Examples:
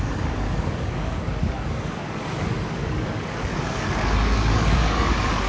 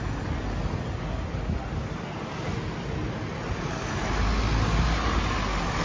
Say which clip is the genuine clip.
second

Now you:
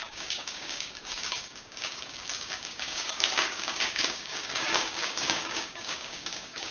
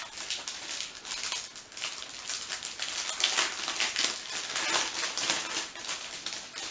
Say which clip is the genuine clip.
second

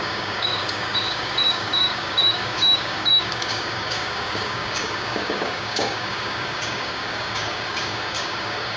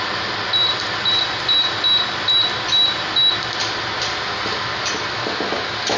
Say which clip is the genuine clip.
second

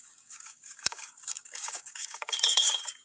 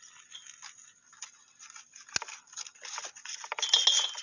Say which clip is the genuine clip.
second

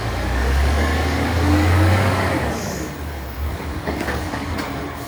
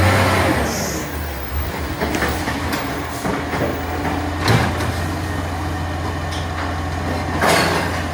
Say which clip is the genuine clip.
second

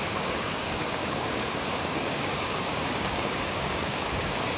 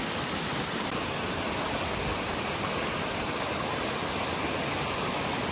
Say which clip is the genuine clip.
second